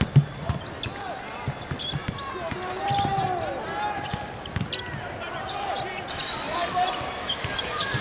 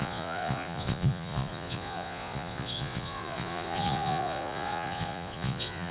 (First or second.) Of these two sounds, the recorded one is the first